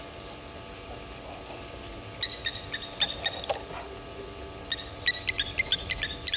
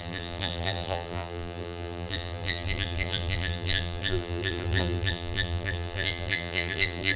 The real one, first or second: first